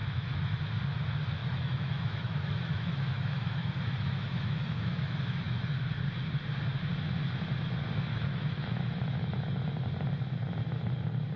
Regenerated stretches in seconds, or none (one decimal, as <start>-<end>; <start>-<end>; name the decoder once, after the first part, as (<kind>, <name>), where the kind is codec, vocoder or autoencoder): 0.0-0.6 (autoencoder, DAC-VAE); 1.4-5.9; 8.1-9.7